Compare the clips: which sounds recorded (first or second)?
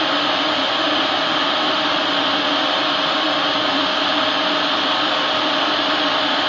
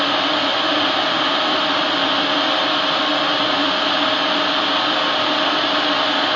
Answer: second